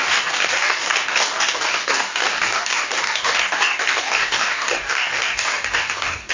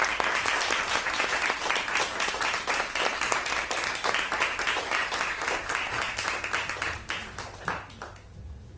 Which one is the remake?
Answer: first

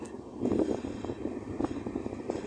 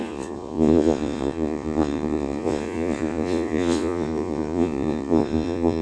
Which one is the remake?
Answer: second